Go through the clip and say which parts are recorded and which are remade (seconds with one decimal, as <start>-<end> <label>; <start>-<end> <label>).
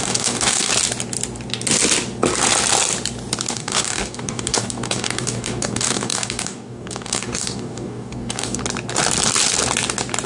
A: 0.0-0.7 remade; 0.7-3.5 recorded; 3.5-8.6 remade; 8.6-10.3 recorded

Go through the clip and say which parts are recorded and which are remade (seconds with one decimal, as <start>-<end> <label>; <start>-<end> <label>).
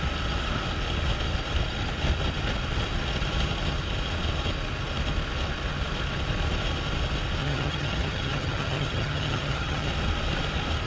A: 0.0-7.4 recorded; 7.4-9.9 remade; 9.9-10.9 recorded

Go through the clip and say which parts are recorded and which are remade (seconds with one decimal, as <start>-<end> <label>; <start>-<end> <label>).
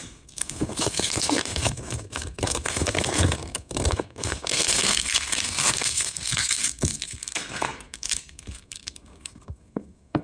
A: 0.0-10.2 remade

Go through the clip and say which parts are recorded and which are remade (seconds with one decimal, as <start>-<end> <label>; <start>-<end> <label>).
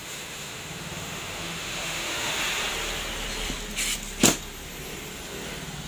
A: 0.0-2.3 remade; 2.3-5.9 recorded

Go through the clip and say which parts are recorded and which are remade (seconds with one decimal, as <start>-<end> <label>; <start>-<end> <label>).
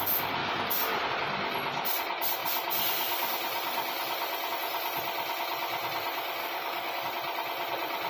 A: 0.0-6.4 recorded; 6.4-7.0 remade; 7.0-8.1 recorded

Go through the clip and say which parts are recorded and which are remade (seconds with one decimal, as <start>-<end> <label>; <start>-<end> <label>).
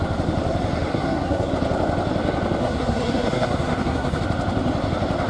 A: 0.0-0.9 recorded; 0.9-1.5 remade; 1.5-2.6 recorded; 2.6-4.2 remade; 4.2-5.3 recorded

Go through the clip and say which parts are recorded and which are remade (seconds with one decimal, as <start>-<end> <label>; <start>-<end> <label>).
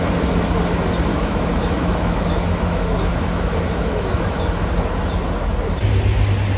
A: 0.0-1.1 recorded; 1.1-4.4 remade; 4.4-6.6 recorded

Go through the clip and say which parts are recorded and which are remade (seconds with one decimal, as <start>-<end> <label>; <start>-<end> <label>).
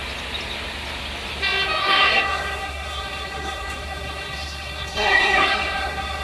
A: 0.0-1.8 recorded; 1.8-6.2 remade